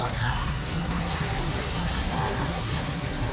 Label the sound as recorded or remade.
remade